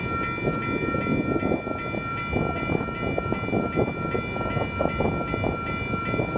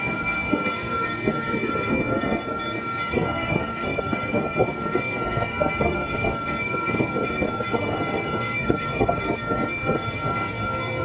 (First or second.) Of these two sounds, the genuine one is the first